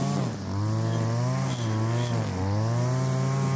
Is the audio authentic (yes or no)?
yes